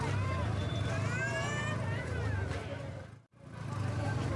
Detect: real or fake real